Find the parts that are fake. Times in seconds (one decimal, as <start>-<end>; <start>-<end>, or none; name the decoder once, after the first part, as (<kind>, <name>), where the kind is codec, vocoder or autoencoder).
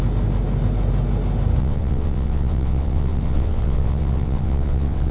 1.6-5.1 (vocoder, WaveNeXt)